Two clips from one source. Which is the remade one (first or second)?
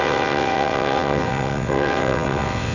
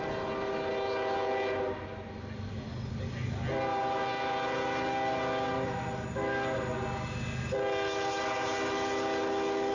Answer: first